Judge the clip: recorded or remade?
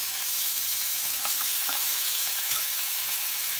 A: remade